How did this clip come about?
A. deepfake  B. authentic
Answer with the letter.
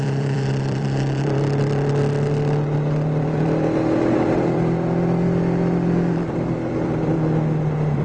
A